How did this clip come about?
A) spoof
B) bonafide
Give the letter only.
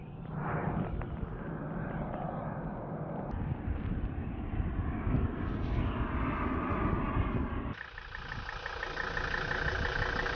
B